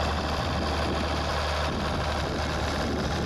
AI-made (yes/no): no